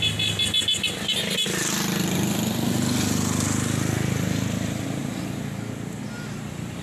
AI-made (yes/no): no